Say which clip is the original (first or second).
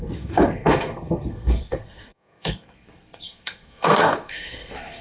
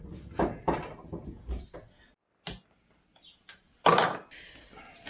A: second